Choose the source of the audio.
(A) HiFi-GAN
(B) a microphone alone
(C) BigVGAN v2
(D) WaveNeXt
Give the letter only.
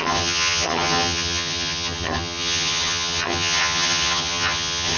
A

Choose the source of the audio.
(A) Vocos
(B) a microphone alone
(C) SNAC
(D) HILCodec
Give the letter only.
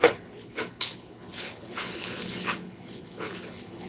D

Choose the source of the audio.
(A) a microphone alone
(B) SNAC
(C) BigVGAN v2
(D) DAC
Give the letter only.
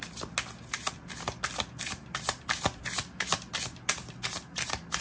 A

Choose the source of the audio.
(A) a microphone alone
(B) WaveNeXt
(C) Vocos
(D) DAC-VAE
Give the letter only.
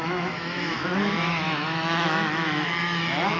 D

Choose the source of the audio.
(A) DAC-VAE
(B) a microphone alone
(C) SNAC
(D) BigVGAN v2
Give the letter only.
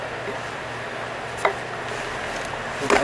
B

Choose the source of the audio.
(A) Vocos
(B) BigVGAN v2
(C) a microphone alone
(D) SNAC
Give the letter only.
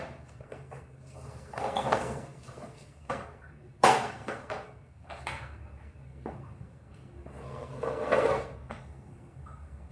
D